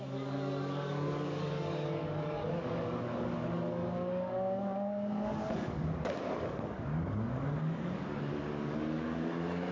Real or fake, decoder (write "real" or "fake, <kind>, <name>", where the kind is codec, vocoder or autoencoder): fake, codec, DAC